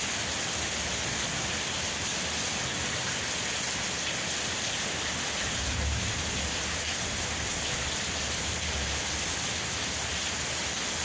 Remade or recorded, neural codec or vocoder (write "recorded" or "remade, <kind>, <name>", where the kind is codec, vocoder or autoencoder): recorded